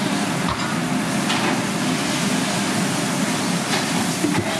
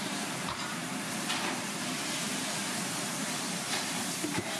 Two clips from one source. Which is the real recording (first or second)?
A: first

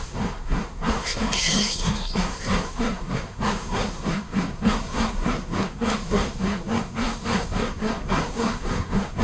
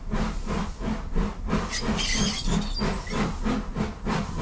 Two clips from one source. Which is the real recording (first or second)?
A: second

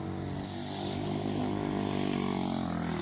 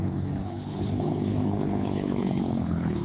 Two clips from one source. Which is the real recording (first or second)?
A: first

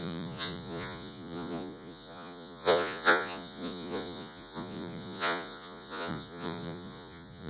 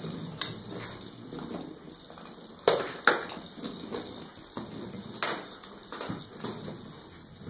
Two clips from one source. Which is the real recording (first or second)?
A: second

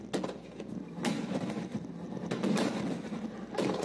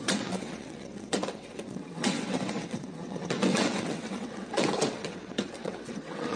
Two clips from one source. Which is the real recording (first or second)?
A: first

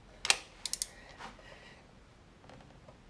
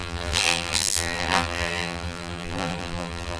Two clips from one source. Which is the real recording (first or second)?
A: first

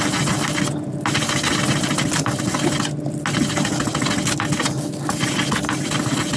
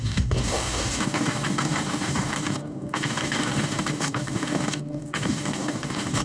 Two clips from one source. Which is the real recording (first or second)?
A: first